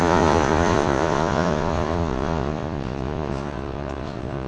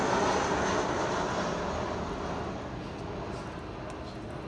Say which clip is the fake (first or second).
first